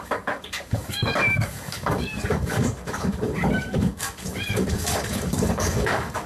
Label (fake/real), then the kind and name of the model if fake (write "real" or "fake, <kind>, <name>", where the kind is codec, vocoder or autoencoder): fake, codec, DAC